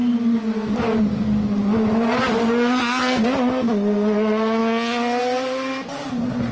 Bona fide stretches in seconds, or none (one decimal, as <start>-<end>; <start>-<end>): 0.0-6.5